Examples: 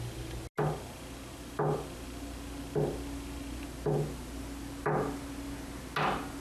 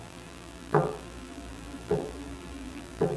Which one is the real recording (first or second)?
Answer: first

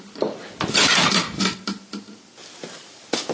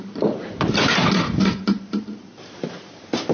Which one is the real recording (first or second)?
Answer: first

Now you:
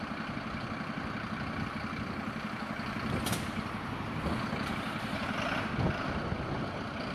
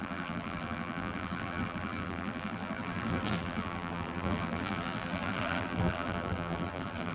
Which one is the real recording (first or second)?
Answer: first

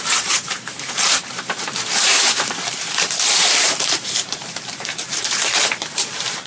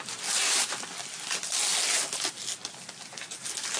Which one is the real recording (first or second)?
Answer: second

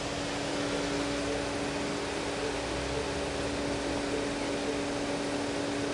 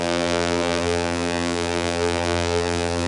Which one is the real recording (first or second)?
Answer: first